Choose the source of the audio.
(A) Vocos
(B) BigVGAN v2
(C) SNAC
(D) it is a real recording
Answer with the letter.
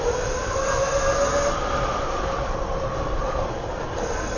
D